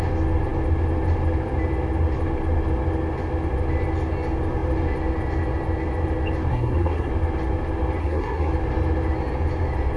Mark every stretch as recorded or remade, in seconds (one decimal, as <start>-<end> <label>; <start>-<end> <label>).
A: 0.0-6.5 recorded; 6.5-7.1 remade; 7.1-8.0 recorded; 8.0-8.5 remade; 8.5-10.0 recorded